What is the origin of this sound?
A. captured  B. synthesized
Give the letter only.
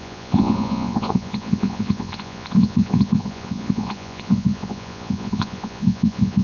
B